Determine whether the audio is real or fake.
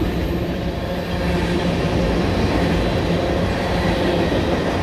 real